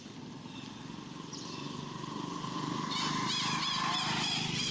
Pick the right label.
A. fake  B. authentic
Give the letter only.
B